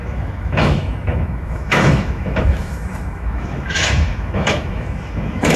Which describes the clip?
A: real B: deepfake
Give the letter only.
B